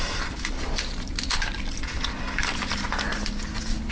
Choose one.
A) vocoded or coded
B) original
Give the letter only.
B